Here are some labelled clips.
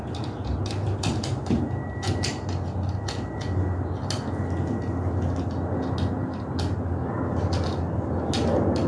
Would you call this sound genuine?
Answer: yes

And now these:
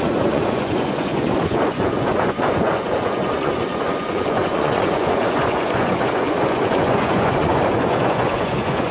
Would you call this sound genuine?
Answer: no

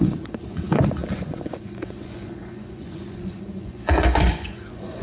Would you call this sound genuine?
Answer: no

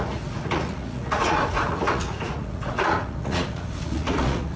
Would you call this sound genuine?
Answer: no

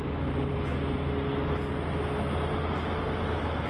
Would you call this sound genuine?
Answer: yes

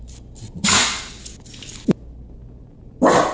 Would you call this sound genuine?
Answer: yes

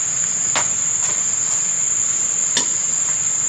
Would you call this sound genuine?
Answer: yes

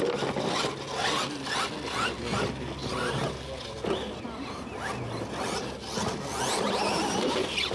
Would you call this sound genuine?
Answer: yes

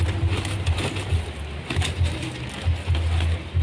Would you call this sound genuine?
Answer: yes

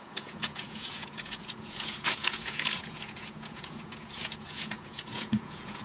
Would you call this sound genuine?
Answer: no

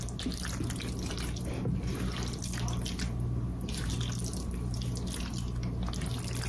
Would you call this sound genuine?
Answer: yes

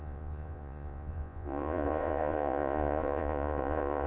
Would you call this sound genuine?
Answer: no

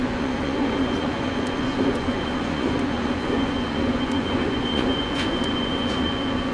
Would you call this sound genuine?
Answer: no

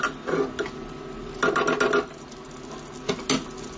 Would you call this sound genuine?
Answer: yes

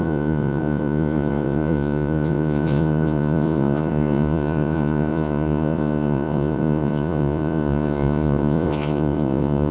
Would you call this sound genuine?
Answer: no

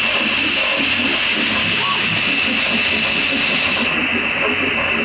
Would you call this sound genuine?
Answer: yes